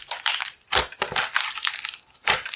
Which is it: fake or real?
real